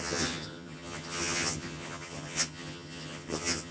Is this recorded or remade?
remade